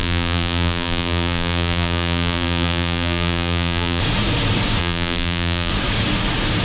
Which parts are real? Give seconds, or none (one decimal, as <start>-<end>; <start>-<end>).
4.0-4.8; 5.7-6.6